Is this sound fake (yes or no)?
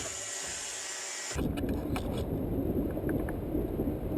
no